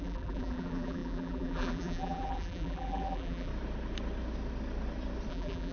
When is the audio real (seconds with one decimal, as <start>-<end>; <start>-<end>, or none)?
3.5-5.3